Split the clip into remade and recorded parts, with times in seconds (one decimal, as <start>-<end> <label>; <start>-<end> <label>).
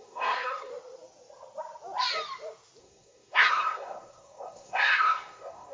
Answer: 0.0-0.7 remade; 0.7-2.8 recorded; 2.8-5.7 remade